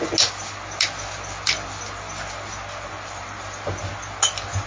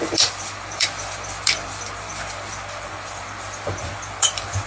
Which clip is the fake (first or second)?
second